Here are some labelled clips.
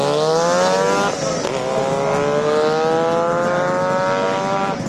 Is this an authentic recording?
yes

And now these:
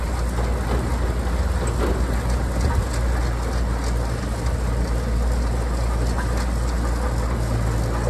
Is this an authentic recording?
yes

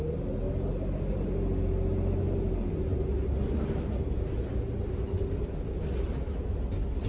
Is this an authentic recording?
yes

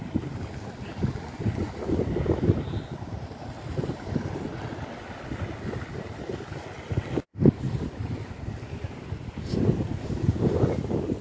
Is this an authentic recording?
yes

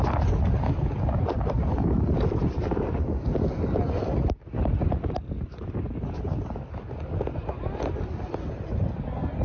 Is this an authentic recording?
yes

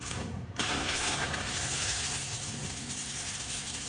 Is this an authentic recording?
no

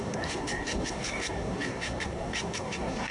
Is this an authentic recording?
no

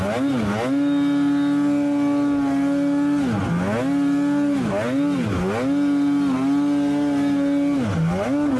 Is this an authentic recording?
yes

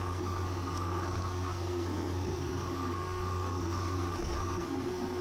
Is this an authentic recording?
no